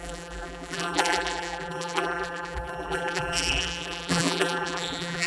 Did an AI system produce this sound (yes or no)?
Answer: yes